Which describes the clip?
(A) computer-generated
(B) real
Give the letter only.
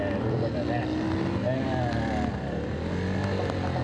B